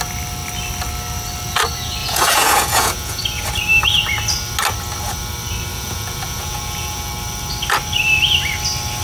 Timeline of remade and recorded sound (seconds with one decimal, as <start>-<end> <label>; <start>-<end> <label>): 0.0-2.0 recorded; 2.0-3.2 remade; 3.2-5.7 recorded; 5.7-7.1 remade; 7.1-9.0 recorded